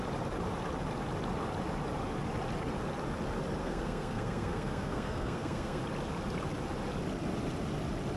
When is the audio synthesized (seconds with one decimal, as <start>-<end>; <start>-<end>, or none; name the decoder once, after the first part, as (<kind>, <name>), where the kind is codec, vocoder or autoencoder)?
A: 3.6-5.8 (codec, SNAC)